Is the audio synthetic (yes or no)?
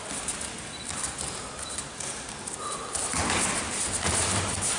no